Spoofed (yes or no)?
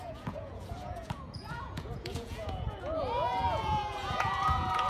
yes